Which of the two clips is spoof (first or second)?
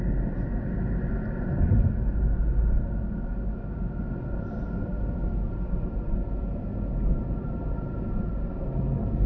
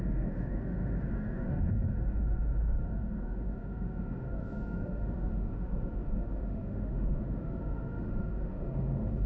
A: second